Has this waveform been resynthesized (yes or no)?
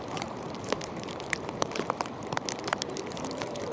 yes